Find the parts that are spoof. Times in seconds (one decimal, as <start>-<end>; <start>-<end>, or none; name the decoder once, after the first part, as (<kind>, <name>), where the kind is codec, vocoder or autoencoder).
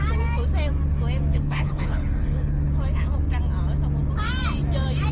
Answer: 1.3-2.7 (codec, HILCodec)